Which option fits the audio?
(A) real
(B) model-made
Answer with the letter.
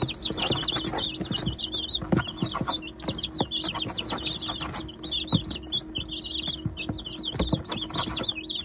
A